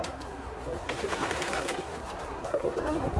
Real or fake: fake